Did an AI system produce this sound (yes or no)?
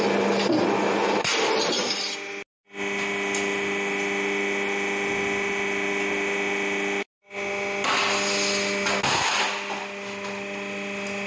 no